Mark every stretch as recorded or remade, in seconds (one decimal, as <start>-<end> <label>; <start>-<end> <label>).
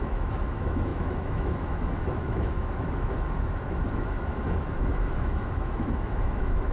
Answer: 0.0-6.7 remade